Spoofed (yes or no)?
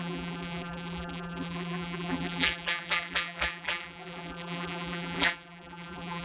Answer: yes